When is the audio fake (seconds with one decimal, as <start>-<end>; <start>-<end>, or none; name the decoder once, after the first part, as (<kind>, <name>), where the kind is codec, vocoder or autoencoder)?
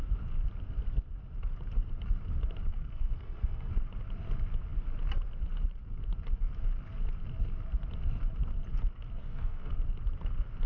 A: 2.7-3.7 (codec, SNAC); 9.2-9.7